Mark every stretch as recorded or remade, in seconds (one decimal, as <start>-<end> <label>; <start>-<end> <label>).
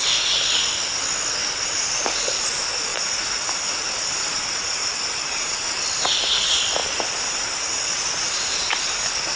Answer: 0.0-1.4 recorded; 1.4-1.9 remade; 1.9-2.9 recorded; 2.9-5.5 remade; 5.5-6.8 recorded; 6.8-9.4 remade